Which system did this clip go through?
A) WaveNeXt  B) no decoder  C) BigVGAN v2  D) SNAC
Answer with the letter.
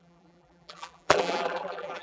C